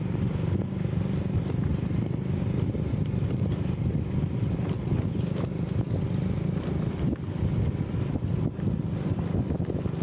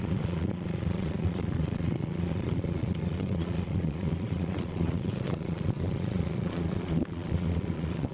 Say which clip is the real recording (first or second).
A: first